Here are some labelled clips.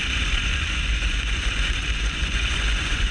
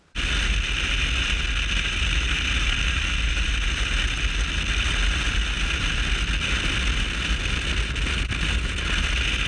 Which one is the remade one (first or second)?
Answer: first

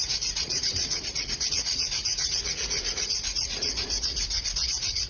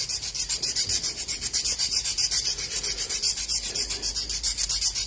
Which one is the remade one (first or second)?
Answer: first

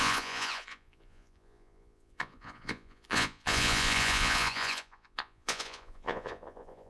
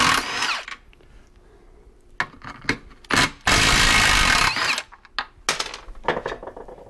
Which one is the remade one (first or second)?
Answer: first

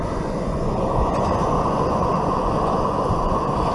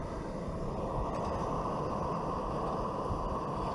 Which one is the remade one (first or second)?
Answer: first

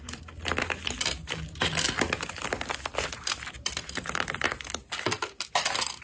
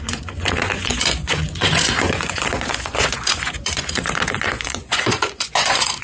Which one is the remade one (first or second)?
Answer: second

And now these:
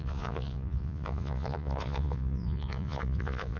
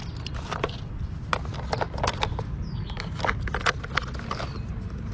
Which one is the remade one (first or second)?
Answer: first